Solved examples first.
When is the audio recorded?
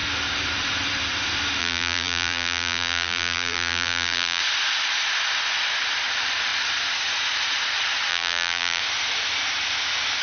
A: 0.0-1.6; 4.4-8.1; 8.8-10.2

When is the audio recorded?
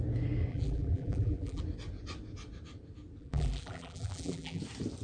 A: 0.0-0.5; 1.6-3.2; 4.6-5.0